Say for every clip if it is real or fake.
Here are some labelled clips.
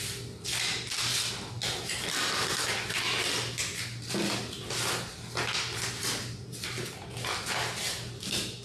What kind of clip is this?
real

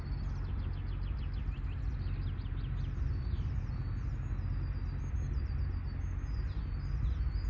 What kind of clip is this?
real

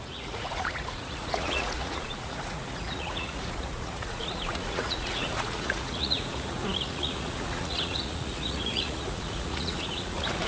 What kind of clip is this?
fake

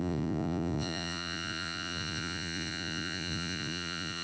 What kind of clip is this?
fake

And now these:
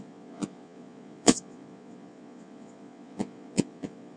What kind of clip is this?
fake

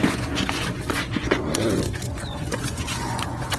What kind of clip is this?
fake